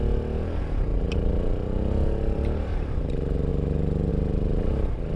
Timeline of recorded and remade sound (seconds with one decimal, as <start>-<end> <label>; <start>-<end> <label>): 0.0-0.9 recorded; 0.9-3.1 remade; 3.1-5.2 recorded